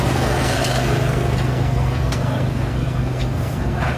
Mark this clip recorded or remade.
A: remade